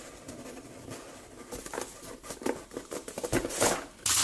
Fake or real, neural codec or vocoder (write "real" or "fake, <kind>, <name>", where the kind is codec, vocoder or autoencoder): real